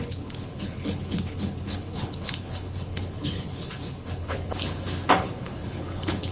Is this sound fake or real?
fake